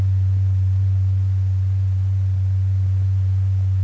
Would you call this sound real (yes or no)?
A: yes